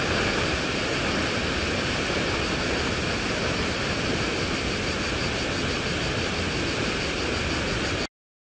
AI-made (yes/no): no